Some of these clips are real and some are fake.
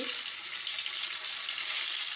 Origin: real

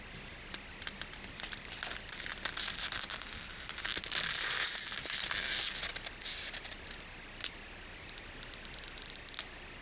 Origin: real